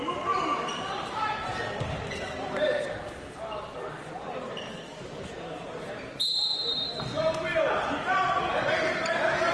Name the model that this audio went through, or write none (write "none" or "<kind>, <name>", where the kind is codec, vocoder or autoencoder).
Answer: vocoder, BigVGAN v2